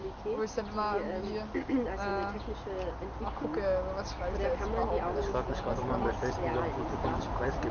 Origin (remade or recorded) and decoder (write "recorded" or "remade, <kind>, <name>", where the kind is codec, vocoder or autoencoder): recorded